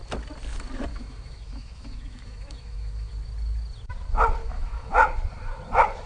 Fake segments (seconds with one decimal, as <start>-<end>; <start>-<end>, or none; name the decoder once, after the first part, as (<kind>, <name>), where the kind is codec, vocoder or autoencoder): 0.9-3.1 (autoencoder, DAC-VAE); 4.4-4.9